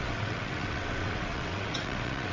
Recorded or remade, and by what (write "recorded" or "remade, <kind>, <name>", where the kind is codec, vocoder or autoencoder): remade, vocoder, WaveNeXt